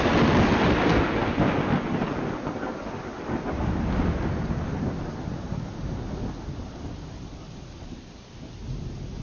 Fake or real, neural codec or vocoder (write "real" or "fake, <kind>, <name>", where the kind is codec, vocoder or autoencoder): real